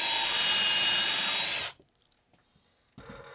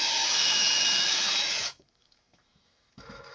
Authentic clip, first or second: first